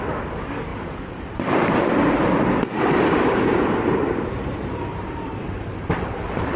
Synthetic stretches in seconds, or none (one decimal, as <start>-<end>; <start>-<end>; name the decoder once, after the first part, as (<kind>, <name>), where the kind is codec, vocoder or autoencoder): 0.7-2.3 (vocoder, BigVGAN v2); 2.7-6.6